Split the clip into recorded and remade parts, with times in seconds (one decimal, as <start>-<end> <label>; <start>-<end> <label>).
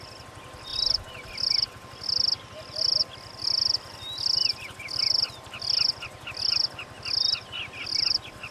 0.0-8.5 recorded